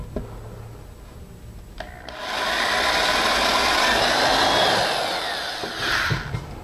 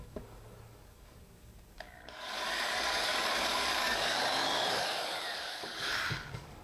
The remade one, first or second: second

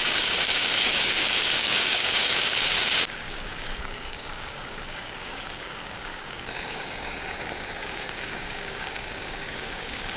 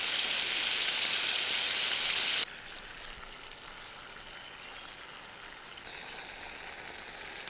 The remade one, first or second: first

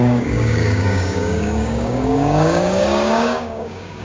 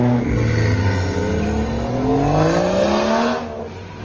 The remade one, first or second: first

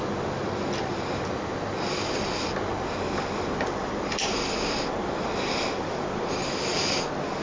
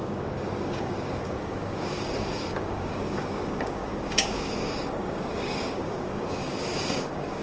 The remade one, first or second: second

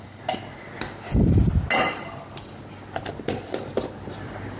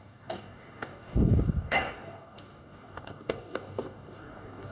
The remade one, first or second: second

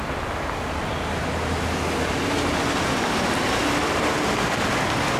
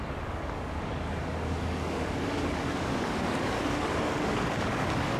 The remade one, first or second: second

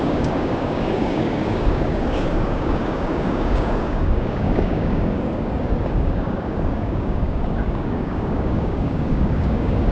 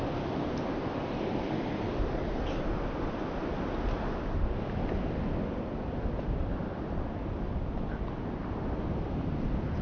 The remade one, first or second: first